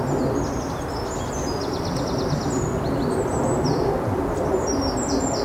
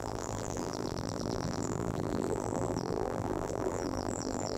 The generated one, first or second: second